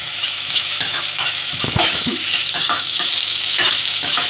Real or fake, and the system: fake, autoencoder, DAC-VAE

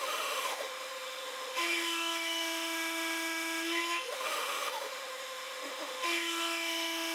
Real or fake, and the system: fake, autoencoder, DAC-VAE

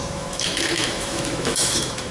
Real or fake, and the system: fake, autoencoder, DAC-VAE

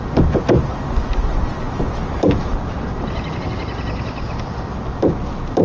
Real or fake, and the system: real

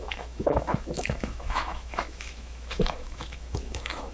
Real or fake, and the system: fake, autoencoder, DAC-VAE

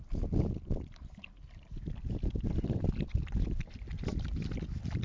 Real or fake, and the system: real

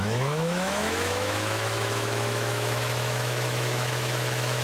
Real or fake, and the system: fake, autoencoder, DAC-VAE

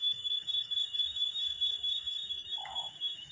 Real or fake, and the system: fake, autoencoder, DAC-VAE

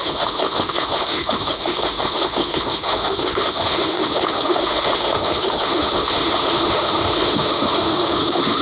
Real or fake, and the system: fake, autoencoder, DAC-VAE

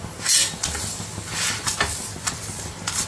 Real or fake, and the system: real